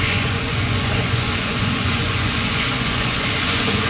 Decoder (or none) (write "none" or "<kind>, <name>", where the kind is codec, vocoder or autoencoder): vocoder, Vocos